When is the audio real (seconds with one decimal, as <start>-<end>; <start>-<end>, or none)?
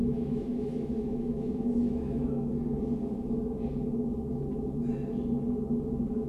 2.5-6.3